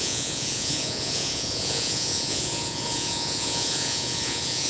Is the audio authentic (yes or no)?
no